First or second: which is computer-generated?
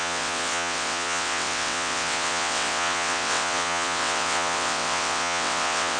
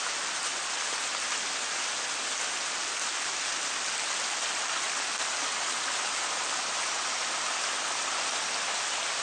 first